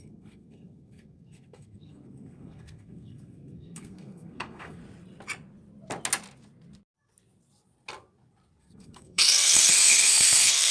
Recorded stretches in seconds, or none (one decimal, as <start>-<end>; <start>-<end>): 4.8-8.6

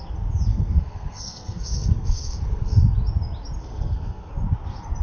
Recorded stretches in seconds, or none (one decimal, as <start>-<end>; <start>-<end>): 0.0-0.5; 2.8-3.6; 4.3-5.0

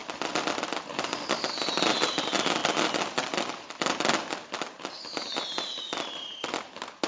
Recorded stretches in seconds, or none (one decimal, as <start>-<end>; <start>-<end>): 0.0-7.1

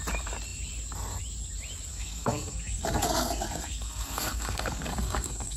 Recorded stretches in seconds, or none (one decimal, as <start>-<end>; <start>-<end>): 0.0-1.9

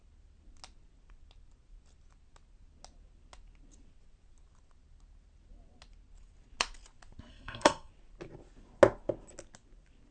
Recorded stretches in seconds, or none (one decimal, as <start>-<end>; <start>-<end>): 0.0-7.3; 7.9-10.1